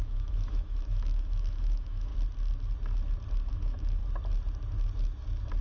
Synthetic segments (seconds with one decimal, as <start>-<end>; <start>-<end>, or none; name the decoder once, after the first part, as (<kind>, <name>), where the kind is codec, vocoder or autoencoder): 0.0-2.1 (autoencoder, DAC-VAE); 3.5-4.0